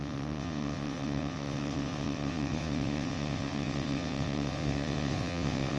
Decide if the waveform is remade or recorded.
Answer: remade